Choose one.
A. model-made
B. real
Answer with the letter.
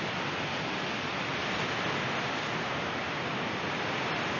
B